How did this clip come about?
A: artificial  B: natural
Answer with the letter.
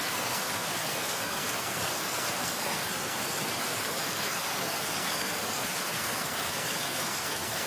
A